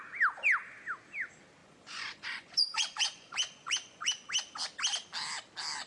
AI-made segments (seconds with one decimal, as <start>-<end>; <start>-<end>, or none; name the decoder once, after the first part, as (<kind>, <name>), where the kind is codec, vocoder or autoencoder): 1.6-4.3 (vocoder, Vocos)